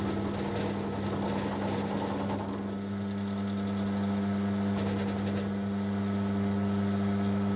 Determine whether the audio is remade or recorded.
recorded